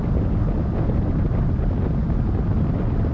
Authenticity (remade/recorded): recorded